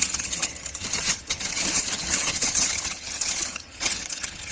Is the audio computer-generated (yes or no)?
yes